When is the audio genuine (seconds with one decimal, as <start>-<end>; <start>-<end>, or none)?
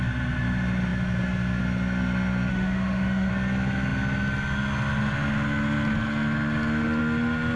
0.0-2.5; 3.3-7.6